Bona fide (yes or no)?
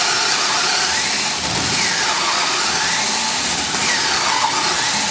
yes